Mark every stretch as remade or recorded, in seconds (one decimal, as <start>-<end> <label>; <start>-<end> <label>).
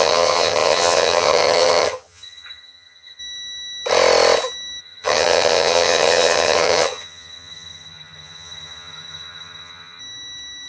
0.0-3.2 remade; 3.2-4.8 recorded; 4.8-10.0 remade; 10.0-10.7 recorded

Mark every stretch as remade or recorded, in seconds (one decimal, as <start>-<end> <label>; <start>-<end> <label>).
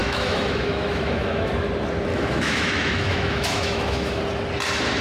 0.0-1.5 remade; 1.5-2.1 recorded; 2.1-4.2 remade; 4.2-5.0 recorded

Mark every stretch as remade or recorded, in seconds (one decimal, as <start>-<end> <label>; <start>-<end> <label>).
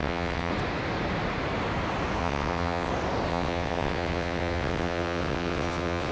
0.0-0.5 remade; 0.5-2.2 recorded; 2.2-2.9 remade; 2.9-3.3 recorded; 3.3-6.1 remade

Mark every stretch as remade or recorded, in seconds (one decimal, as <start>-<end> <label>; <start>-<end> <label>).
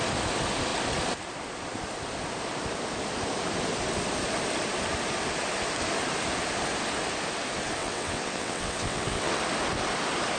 0.0-7.8 recorded; 7.8-9.4 remade; 9.4-10.4 recorded